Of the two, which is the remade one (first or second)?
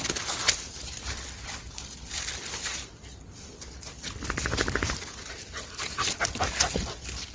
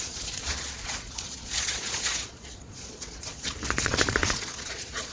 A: second